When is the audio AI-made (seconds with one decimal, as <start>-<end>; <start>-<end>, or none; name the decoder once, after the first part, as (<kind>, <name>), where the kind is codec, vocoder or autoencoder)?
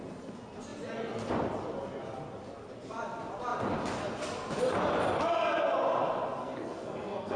6.4-7.4 (codec, SNAC)